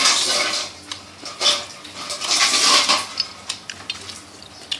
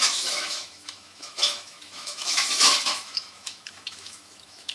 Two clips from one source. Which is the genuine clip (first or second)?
first